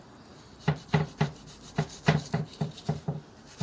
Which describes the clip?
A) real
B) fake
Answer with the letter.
B